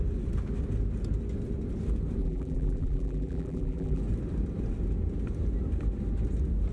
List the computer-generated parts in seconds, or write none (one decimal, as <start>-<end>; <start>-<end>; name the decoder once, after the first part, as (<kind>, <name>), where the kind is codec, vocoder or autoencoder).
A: 2.2-4.0 (vocoder, BigVGAN v2)